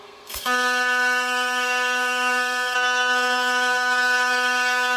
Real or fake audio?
fake